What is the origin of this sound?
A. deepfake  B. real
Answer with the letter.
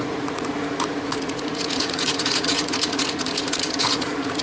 A